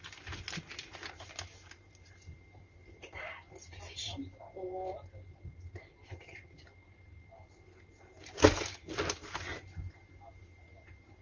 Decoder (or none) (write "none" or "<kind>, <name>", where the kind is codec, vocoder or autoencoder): none